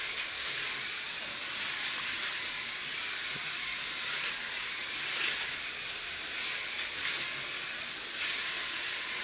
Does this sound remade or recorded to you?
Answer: recorded